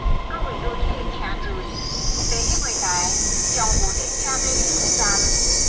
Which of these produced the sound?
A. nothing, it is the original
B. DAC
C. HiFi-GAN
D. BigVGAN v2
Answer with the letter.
A